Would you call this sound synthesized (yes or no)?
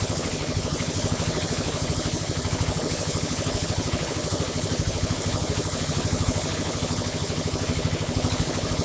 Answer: yes